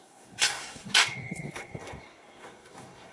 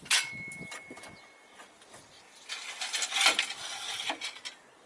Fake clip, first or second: first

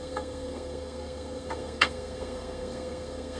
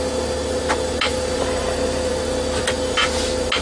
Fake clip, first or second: first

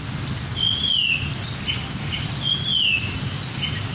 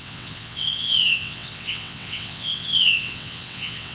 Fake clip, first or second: second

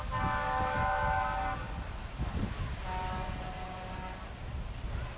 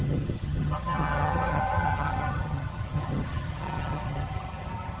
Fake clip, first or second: second